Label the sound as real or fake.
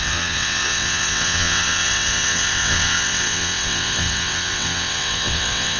fake